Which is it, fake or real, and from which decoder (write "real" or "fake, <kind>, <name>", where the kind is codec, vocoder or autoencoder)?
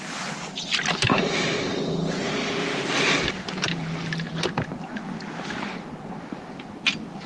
real